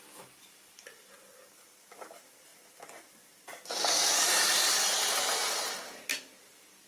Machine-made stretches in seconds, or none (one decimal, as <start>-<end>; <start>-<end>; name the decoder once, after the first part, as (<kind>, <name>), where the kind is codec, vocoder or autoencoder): none